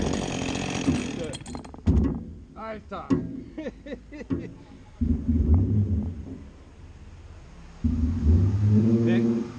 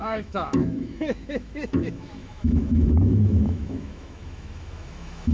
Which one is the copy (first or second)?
second